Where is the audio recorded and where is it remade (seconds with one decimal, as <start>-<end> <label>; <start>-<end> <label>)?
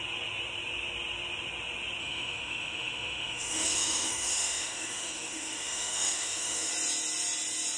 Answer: 0.0-2.0 recorded; 2.0-6.7 remade; 6.7-7.8 recorded